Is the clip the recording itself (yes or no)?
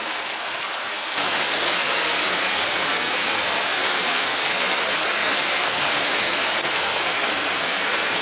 no